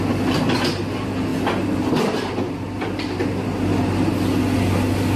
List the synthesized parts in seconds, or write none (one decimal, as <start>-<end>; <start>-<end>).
none